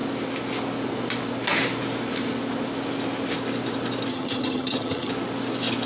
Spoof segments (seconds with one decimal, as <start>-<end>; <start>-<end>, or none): 4.1-5.1